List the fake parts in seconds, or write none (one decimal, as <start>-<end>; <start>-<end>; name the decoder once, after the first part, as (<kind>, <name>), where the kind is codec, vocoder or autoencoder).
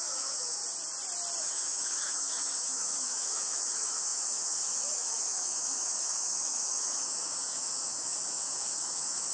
0.0-0.6 (autoencoder, DAC-VAE); 1.4-9.3